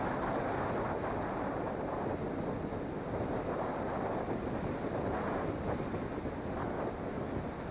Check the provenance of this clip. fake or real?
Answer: real